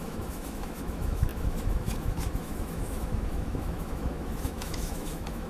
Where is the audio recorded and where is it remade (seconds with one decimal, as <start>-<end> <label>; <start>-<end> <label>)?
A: 0.0-5.5 remade